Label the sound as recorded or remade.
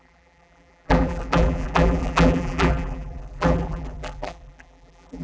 remade